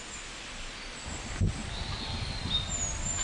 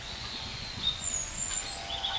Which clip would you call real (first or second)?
first